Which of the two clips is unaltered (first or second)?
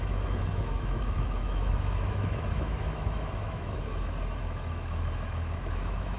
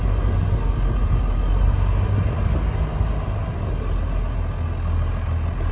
second